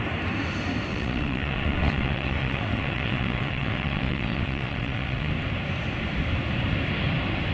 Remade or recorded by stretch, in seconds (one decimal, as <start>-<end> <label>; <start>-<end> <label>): 0.0-0.9 recorded; 0.9-5.3 remade; 5.3-7.5 recorded